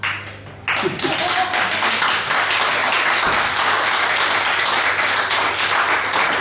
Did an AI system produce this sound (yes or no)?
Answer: no